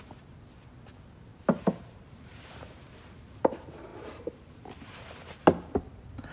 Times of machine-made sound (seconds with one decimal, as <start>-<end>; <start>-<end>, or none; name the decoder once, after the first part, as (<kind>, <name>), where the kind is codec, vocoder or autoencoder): 1.3-2.4 (vocoder, BigVGAN v2); 3.9-5.3